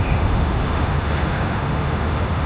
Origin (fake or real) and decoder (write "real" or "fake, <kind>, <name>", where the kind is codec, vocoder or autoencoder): fake, autoencoder, DAC-VAE